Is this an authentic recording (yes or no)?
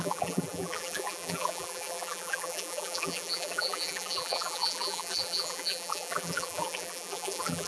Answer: no